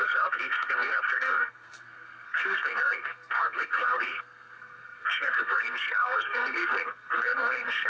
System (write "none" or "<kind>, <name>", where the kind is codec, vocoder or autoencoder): codec, SNAC